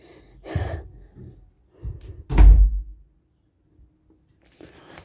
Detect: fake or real real